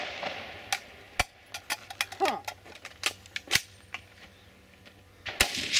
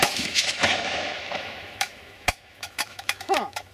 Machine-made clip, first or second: second